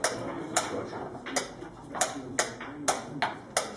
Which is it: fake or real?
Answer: real